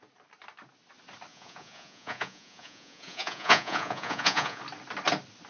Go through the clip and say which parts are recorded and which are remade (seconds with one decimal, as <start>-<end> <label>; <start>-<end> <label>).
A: 0.0-1.3 recorded; 1.3-4.6 remade; 4.6-5.5 recorded